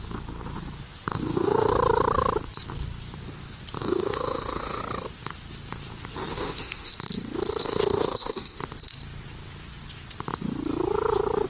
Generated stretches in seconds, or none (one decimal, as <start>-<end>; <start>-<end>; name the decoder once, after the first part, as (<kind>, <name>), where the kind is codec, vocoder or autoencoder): 1.1-1.7 (autoencoder, DAC-VAE); 3.8-4.8; 6.3-6.9; 7.6-8.6